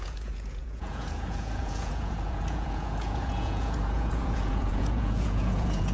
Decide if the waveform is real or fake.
fake